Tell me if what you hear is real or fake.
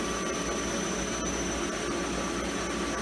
real